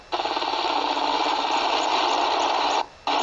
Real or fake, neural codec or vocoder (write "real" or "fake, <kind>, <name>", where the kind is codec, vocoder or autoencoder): real